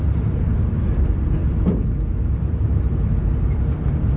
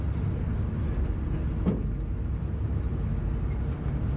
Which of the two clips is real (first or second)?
second